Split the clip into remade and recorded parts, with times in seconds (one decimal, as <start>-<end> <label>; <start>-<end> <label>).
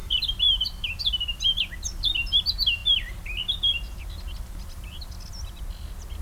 0.0-1.7 remade; 1.7-6.2 recorded